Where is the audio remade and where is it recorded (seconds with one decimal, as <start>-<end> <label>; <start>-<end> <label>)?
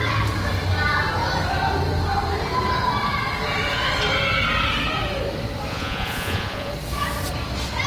0.0-5.7 recorded; 5.7-6.7 remade; 6.7-7.9 recorded